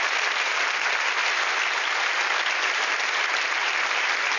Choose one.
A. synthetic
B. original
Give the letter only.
B